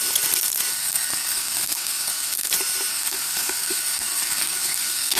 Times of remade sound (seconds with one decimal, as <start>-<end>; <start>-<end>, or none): 0.7-2.5; 2.9-5.2